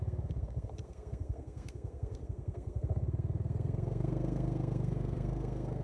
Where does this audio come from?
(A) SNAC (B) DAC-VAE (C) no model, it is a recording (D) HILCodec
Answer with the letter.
A